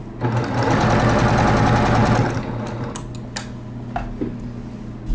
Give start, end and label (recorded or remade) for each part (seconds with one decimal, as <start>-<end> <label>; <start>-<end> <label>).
0.0-5.1 recorded